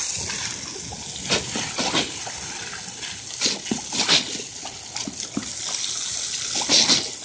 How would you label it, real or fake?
real